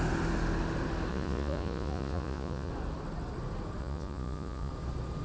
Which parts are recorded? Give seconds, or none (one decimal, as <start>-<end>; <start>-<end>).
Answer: 0.0-1.1; 2.7-3.8; 4.7-5.2